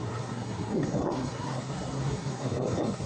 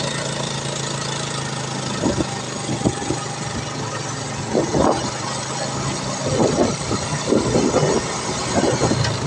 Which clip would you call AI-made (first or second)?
first